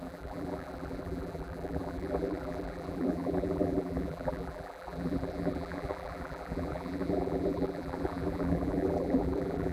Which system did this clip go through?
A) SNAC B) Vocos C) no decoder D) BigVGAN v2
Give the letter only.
D